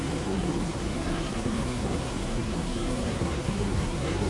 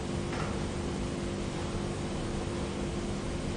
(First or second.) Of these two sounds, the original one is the second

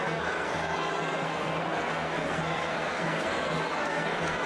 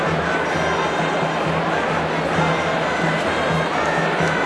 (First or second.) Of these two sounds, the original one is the second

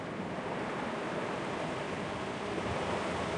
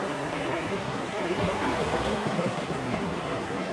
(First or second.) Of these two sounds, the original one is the first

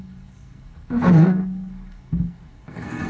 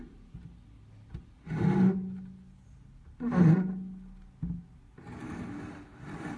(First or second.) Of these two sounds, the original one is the second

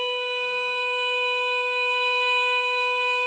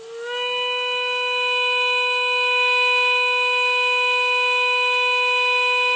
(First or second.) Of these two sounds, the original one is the second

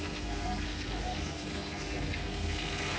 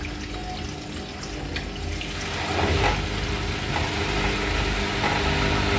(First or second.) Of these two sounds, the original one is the second